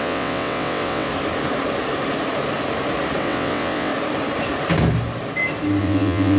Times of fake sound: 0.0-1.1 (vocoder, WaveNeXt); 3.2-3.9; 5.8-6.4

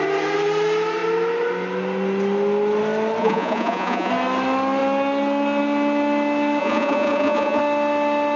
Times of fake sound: 3.2-4.1 (vocoder, Vocos); 6.6-7.6

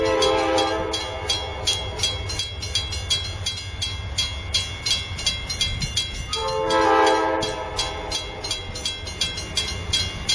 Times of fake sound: none

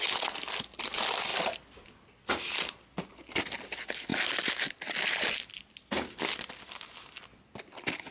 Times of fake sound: none

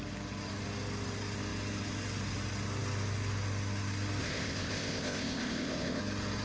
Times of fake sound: 4.2-6.0 (codec, ZipCodec)

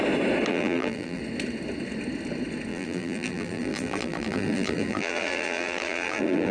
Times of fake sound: 0.5-1.2 (vocoder, BigVGAN v2); 2.7-6.5

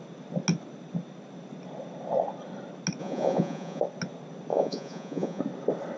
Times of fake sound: 3.0-3.8 (vocoder, Vocos); 4.5-5.4

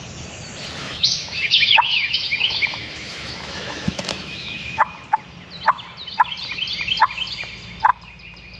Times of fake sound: 0.8-4.9 (autoencoder, DAC-VAE)